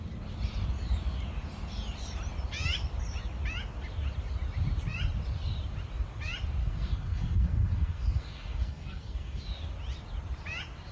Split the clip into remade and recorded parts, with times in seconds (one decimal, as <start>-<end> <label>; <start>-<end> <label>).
0.0-6.6 recorded; 6.6-9.4 remade; 9.4-10.9 recorded

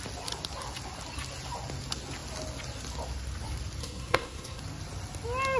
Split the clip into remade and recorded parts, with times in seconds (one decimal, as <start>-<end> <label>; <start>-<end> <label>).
0.0-3.8 recorded; 3.8-4.6 remade; 4.6-5.6 recorded